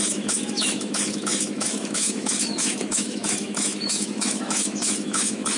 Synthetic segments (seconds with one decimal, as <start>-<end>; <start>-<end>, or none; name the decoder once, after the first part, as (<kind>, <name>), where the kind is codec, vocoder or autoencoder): 0.0-5.6 (autoencoder, DAC-VAE)